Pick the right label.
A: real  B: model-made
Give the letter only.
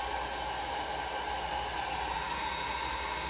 A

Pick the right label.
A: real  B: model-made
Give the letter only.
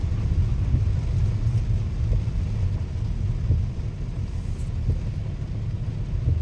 A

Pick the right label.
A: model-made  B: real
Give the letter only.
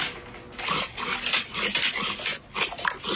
B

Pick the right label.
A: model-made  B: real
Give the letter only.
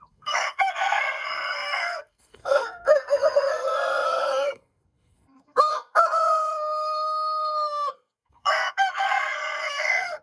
A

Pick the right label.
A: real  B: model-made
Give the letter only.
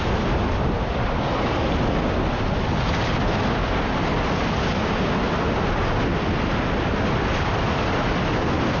A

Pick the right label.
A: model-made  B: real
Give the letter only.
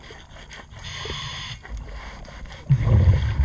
B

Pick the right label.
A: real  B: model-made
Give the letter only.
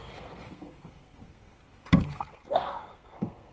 B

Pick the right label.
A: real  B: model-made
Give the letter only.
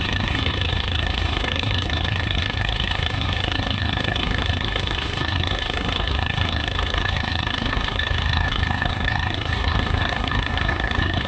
B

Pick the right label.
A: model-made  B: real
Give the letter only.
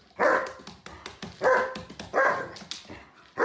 B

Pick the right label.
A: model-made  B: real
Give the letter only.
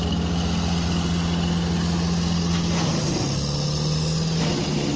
B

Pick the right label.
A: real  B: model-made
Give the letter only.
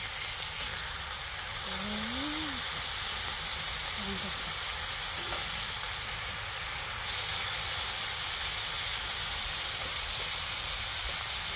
A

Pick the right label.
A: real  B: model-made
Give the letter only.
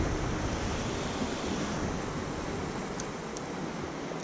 A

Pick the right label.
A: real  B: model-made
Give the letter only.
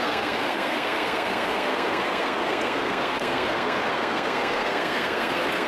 B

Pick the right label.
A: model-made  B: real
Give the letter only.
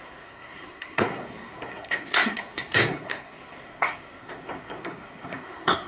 A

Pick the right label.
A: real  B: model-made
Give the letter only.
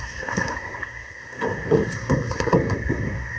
B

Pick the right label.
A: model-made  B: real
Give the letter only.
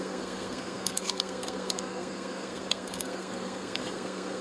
A